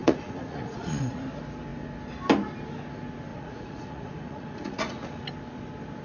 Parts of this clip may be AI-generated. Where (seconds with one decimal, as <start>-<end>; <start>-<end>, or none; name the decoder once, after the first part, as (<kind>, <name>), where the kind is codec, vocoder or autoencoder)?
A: 0.0-1.2 (vocoder, Vocos); 3.3-5.3